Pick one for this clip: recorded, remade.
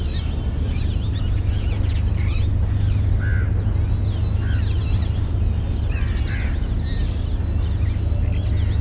recorded